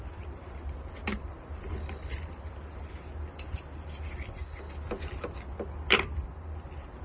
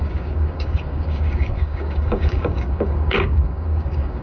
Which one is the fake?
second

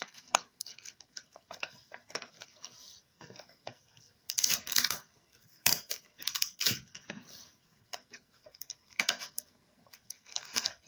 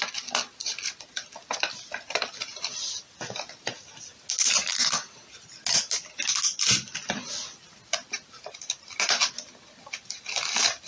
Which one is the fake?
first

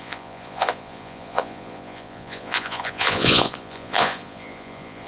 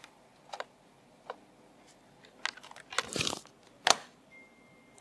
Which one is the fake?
first